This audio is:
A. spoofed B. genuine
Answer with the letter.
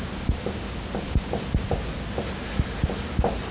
B